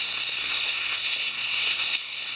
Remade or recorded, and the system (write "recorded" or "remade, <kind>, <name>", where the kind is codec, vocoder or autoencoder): remade, codec, SNAC